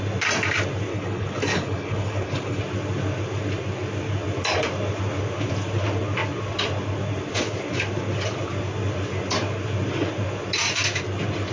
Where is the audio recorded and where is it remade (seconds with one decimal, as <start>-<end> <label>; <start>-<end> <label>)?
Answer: 0.0-0.9 recorded; 0.9-2.6 remade; 2.6-11.5 recorded